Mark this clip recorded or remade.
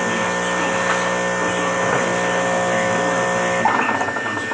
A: recorded